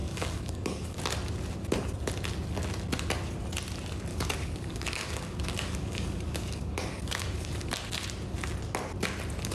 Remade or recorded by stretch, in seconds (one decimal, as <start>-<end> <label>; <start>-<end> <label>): 0.0-1.0 remade; 1.0-4.1 recorded; 4.1-7.7 remade; 7.7-9.5 recorded